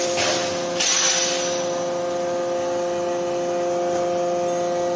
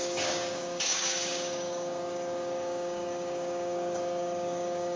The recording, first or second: first